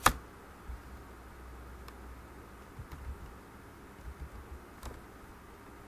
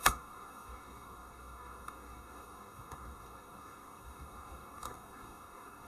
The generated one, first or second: second